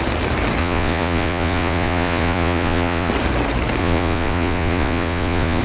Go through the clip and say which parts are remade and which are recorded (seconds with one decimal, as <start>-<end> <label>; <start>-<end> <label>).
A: 0.0-0.6 recorded; 0.6-3.1 remade; 3.1-3.8 recorded; 3.8-5.6 remade